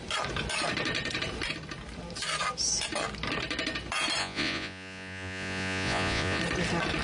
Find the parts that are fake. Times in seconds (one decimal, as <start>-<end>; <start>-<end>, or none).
4.2-6.4